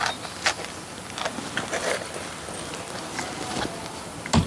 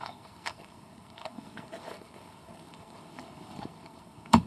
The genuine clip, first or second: first